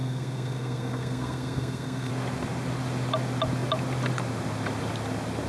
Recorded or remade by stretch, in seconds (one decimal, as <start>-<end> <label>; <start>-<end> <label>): 0.0-2.1 remade; 2.1-5.5 recorded